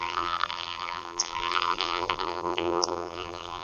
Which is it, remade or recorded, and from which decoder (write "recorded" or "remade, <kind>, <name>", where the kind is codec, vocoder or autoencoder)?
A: remade, vocoder, BigVGAN v2